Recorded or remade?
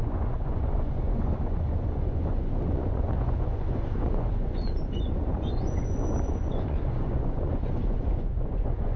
remade